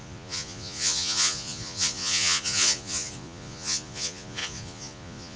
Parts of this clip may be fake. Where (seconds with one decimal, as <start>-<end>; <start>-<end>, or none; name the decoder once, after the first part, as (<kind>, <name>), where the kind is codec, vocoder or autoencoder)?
0.0-5.4 (vocoder, Vocos)